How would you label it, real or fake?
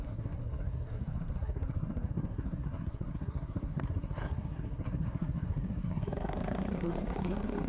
fake